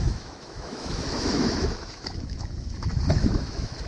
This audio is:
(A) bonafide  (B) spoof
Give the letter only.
B